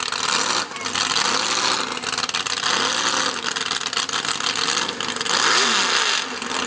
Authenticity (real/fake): real